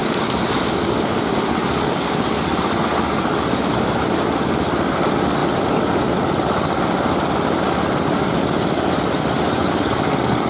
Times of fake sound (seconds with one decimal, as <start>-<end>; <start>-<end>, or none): 0.0-2.1; 9.6-10.5